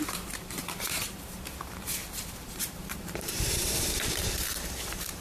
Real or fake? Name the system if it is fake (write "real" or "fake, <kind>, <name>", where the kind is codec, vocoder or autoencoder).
fake, vocoder, BigVGAN v2